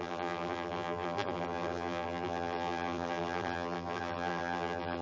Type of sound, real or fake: fake